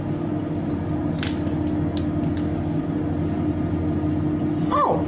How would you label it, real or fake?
real